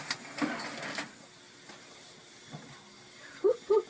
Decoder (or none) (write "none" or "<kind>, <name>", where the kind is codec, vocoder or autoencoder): none